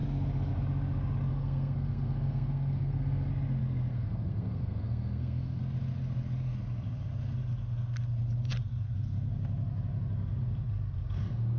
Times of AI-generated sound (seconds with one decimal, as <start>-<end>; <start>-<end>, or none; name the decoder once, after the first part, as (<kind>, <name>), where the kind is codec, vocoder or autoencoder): 1.3-3.3 (codec, SNAC); 3.9-5.6